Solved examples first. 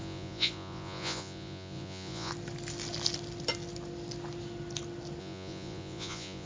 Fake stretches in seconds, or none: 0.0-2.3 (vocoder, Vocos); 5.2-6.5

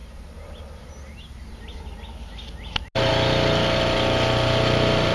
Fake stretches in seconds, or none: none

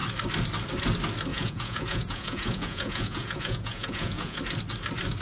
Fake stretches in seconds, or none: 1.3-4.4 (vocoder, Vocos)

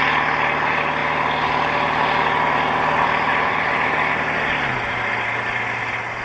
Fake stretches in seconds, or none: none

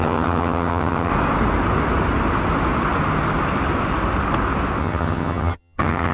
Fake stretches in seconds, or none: 0.0-1.1 (vocoder, HiFi-GAN); 4.8-6.1

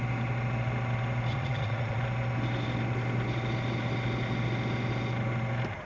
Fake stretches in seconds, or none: 1.3-2.0 (vocoder, Vocos)

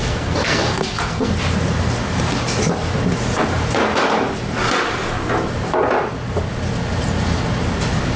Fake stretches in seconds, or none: 0.0-1.3 (codec, SNAC)